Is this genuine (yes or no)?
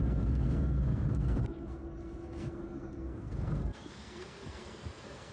no